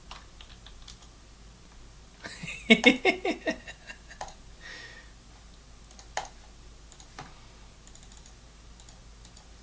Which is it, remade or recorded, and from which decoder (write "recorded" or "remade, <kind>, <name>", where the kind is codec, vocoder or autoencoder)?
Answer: recorded